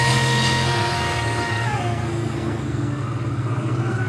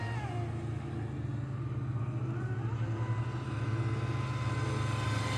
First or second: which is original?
second